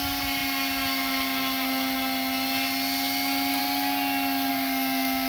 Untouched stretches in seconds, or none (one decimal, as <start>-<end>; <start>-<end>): 0.0-4.5